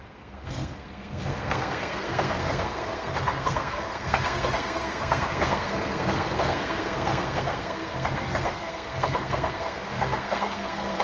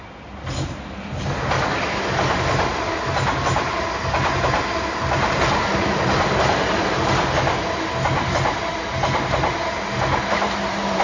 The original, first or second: second